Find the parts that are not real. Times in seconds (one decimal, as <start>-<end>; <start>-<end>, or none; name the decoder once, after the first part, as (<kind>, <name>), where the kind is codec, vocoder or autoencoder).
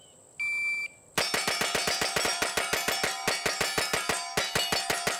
none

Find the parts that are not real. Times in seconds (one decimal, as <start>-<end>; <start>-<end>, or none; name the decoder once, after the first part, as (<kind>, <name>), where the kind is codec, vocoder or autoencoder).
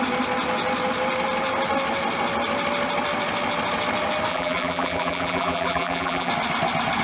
4.3-6.3 (vocoder, BigVGAN v2)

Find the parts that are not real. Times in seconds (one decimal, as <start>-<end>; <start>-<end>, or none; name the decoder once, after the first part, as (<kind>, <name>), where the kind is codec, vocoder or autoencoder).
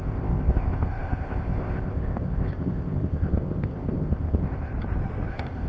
0.0-4.7 (codec, ZipCodec); 5.3-5.7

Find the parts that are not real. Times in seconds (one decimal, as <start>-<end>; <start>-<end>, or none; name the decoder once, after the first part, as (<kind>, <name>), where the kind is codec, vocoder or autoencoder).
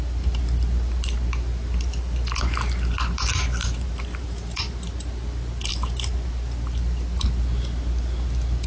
3.6-4.7 (vocoder, BigVGAN v2); 5.7-6.3